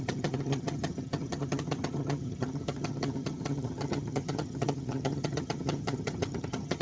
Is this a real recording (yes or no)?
no